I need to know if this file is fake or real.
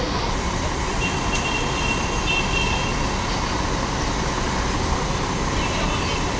real